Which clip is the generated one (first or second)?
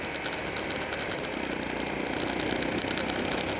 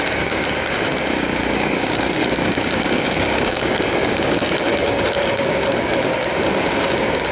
second